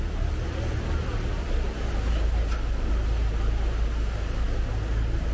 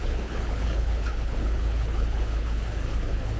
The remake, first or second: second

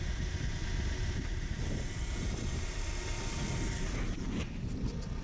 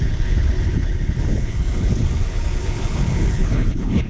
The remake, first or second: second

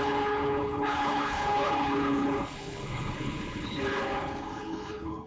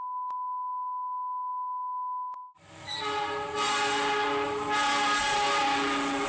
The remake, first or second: first